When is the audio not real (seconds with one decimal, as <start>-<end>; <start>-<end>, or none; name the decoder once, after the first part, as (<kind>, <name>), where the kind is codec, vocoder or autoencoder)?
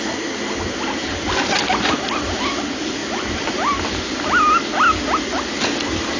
none